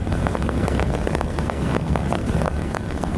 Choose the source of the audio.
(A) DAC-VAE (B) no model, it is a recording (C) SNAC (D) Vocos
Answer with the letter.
C